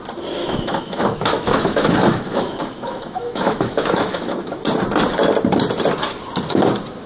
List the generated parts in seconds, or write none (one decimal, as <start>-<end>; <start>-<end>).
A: 0.4-4.6